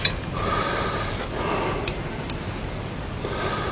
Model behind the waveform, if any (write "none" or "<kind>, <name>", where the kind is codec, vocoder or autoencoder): none